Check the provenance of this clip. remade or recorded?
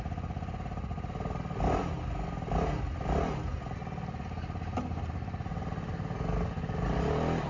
recorded